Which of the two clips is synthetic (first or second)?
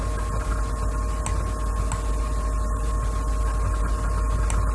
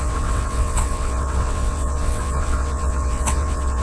second